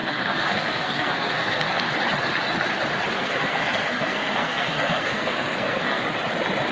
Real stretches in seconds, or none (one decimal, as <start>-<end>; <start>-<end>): 1.9-3.1; 6.0-6.7